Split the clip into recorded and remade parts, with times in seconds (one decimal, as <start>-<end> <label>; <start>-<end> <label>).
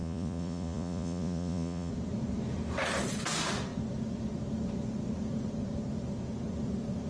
0.0-1.9 remade; 1.9-7.1 recorded